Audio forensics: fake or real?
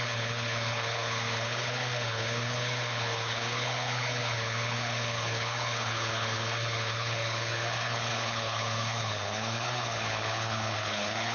fake